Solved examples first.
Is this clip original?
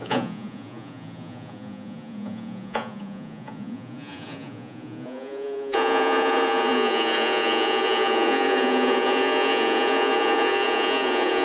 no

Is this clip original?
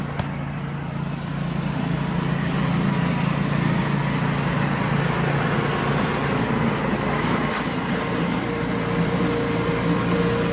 yes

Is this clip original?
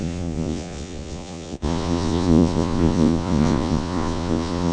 no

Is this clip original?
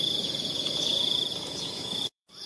no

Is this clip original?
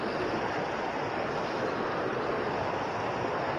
yes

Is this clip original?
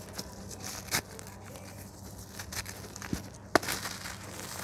yes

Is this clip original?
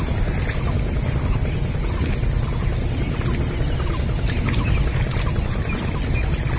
yes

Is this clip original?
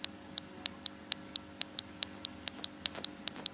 yes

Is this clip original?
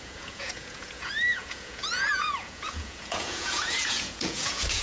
no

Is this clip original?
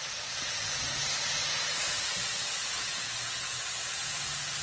no